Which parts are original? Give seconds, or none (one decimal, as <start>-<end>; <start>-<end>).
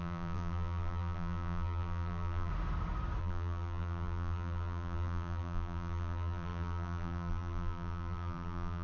2.5-3.2